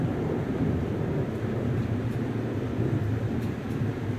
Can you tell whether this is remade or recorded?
remade